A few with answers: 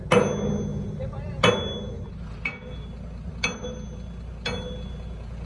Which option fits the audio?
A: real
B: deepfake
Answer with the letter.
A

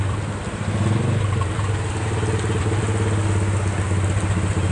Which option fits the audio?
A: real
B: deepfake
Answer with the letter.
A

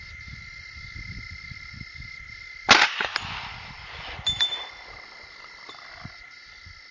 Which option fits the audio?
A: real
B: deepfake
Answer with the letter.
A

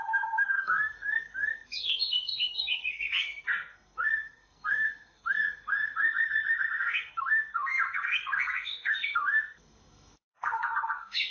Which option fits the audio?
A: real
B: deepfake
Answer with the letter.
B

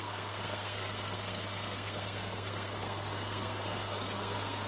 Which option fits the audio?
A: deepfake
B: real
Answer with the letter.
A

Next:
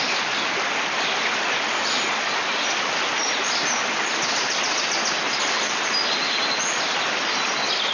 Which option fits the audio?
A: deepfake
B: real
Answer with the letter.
B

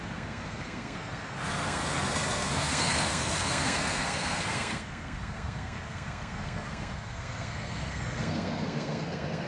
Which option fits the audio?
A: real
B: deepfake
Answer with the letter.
B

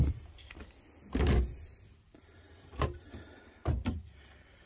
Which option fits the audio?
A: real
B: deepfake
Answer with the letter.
A